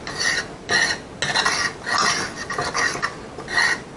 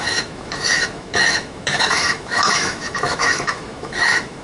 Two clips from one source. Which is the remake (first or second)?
second